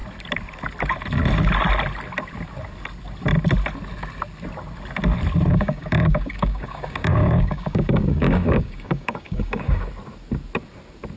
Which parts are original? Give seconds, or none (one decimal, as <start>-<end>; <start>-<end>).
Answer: 0.0-5.5; 9.9-11.2